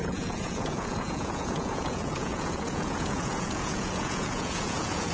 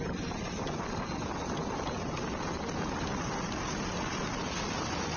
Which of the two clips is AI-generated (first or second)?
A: first